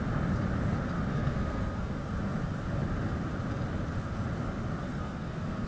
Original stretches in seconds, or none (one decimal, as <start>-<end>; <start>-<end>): 0.0-1.1; 1.9-4.8

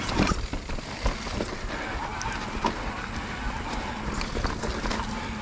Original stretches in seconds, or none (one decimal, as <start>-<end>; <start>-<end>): 0.0-5.4

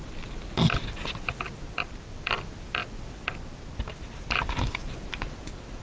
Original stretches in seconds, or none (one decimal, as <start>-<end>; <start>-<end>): 0.0-5.8

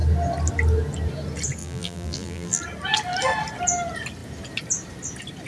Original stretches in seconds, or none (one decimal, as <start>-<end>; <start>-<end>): 0.0-1.6; 2.6-5.5

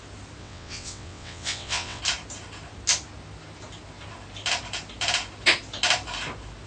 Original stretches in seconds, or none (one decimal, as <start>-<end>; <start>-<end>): 0.0-0.4; 2.0-6.7

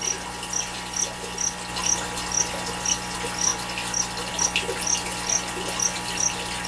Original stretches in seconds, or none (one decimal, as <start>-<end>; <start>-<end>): 0.0-6.7

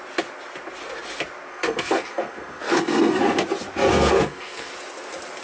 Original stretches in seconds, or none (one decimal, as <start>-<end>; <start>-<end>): 0.0-1.5; 3.2-3.9; 4.7-5.4